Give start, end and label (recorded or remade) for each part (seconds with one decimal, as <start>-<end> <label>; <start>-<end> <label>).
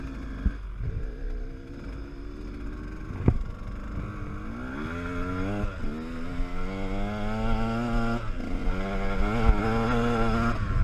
0.0-10.8 recorded